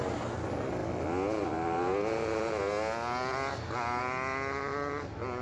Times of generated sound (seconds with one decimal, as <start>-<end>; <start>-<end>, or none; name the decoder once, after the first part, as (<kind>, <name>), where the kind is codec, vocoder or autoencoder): none